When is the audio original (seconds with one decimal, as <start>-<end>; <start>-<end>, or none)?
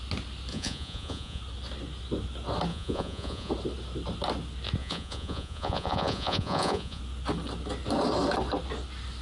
0.0-0.5; 1.4-2.7; 3.5-4.8; 7.0-9.2